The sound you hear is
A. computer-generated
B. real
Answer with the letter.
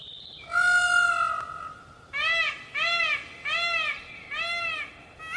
B